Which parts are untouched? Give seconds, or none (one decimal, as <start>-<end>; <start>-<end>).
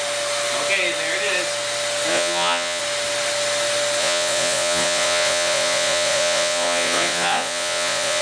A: 0.0-2.1; 2.8-4.0